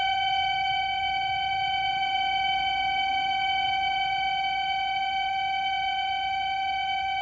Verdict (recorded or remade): remade